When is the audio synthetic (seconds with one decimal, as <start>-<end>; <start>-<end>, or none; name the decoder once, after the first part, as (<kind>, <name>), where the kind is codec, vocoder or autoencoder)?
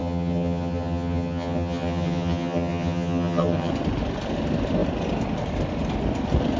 0.0-3.7 (vocoder, HiFi-GAN)